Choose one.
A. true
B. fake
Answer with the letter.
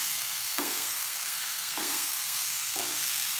B